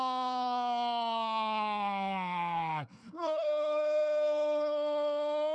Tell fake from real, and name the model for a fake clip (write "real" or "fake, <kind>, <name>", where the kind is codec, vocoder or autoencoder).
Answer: fake, codec, SNAC